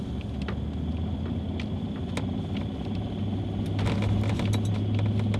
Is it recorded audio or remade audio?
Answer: recorded